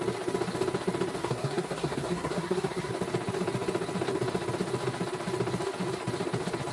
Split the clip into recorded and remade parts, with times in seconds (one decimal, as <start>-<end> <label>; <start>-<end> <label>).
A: 0.0-1.2 recorded; 1.2-2.9 remade; 2.9-6.7 recorded